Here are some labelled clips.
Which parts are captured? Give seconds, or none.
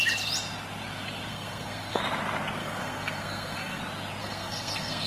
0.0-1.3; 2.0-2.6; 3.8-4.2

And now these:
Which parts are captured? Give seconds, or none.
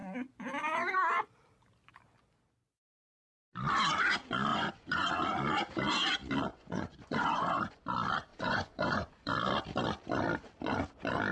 0.0-4.5; 5.1-6.5; 7.8-8.3; 9.3-11.3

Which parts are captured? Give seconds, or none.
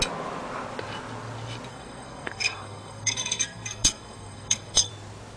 0.0-1.7; 4.9-5.4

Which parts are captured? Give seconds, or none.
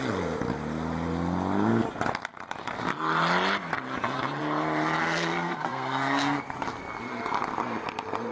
0.0-5.0; 6.4-8.3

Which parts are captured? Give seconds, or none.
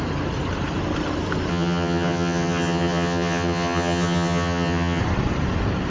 0.0-1.5; 5.0-5.9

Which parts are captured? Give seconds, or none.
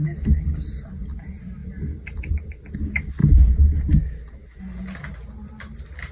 0.0-6.1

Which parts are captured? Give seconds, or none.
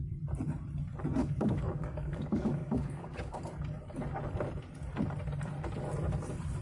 0.0-1.2; 3.4-6.6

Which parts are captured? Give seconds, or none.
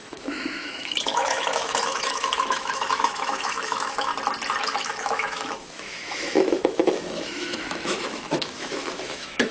4.1-4.6